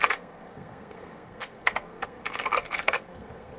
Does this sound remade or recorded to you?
remade